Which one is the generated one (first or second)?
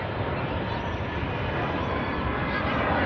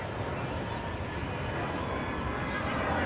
first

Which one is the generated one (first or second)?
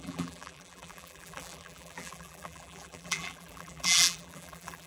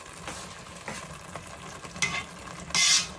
first